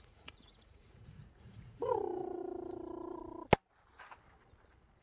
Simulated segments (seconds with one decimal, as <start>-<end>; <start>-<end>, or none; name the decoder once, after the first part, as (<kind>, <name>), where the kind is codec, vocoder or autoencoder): 0.0-2.4 (vocoder, Vocos)